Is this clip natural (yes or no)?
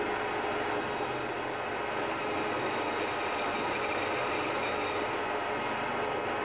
yes